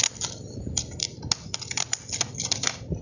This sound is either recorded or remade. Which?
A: recorded